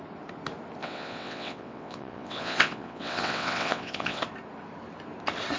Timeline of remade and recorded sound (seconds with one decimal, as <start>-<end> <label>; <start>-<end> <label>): 0.0-0.8 recorded; 0.8-4.2 remade; 4.2-5.6 recorded